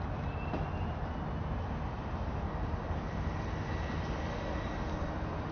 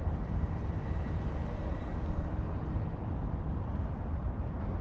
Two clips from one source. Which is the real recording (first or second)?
first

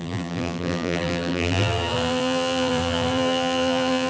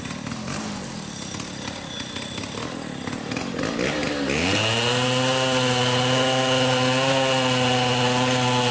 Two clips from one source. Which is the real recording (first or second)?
second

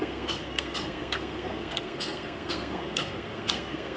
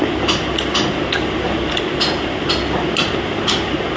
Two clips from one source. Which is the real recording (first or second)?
second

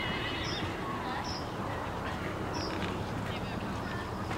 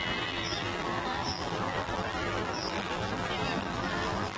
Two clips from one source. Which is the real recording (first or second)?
first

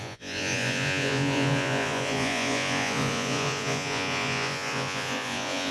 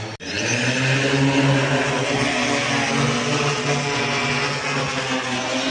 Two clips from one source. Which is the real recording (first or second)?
second